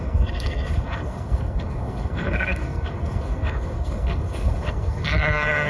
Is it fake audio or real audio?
fake